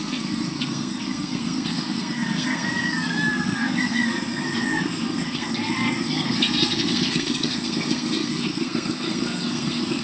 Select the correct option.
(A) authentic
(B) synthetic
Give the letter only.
B